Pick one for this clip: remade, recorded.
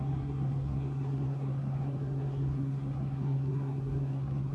remade